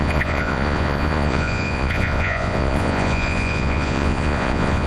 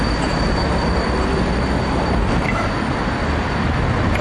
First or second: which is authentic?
second